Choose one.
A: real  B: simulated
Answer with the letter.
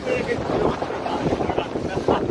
A